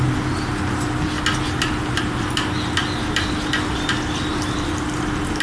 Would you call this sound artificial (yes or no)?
no